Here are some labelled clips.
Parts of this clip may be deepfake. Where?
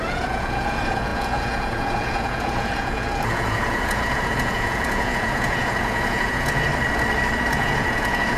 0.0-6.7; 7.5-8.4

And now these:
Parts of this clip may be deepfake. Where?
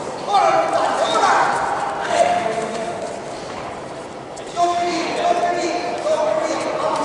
2.0-3.0; 4.6-5.1